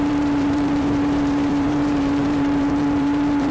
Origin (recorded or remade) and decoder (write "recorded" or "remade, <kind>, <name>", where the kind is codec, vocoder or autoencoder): remade, vocoder, BigVGAN v2